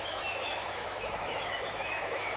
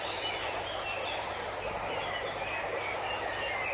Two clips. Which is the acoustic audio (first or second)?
second